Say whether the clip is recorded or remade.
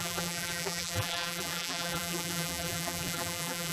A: remade